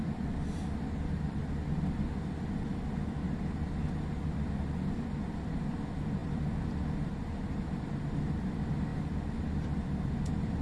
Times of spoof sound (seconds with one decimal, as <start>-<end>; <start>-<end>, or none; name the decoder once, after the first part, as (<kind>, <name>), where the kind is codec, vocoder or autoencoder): 0.0-1.4 (vocoder, BigVGAN v2); 4.2-8.9; 9.4-10.6